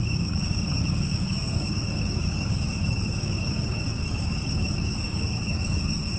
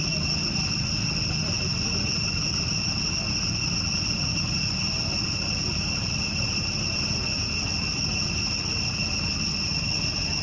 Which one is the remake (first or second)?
first